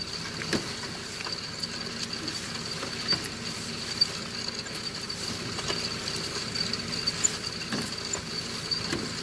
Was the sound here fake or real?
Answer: real